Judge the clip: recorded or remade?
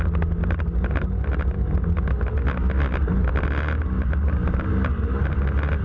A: recorded